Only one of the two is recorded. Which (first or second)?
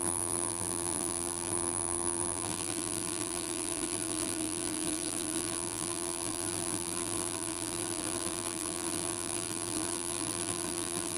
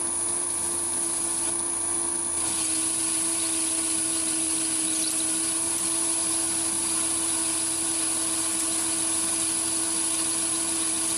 second